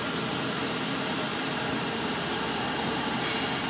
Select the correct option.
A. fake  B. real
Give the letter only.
A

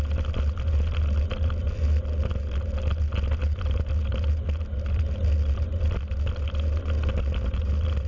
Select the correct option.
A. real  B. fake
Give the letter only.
A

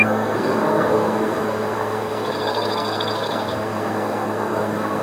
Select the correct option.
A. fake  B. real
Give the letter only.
A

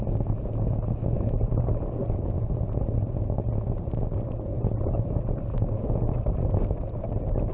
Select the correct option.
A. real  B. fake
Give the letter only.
A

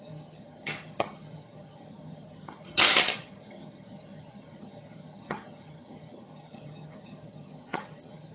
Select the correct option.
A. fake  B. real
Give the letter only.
A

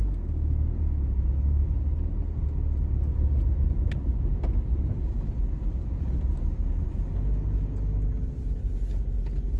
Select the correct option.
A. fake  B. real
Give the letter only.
B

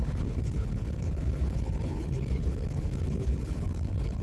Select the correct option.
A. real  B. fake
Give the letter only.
B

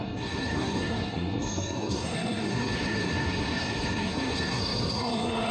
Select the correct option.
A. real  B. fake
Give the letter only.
B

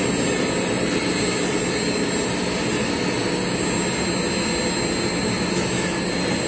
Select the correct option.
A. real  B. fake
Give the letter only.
A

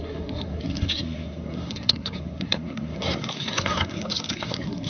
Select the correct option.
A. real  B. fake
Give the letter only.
B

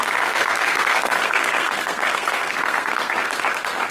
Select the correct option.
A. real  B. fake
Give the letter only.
B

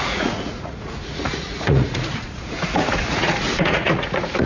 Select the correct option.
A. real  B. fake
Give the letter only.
B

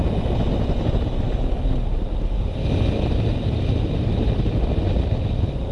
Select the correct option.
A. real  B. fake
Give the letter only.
A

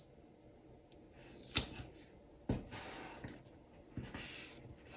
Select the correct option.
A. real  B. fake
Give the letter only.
A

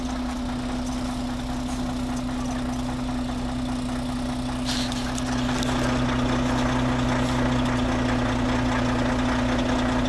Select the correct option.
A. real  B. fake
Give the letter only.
A